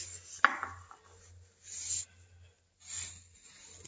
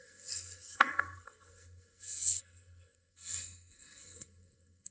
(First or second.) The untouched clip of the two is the first